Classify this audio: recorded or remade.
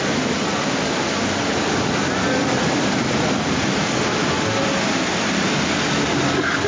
recorded